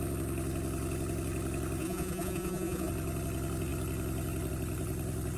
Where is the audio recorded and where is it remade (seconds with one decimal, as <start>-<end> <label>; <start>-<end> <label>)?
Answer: 0.0-1.8 recorded; 1.8-2.9 remade; 2.9-5.4 recorded